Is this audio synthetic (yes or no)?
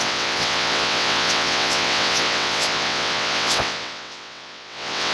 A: yes